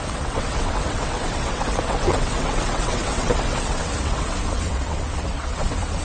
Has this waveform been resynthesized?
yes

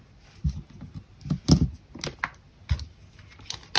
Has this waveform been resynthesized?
no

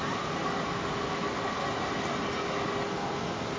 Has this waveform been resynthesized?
no